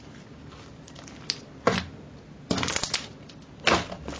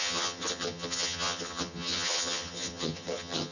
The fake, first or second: second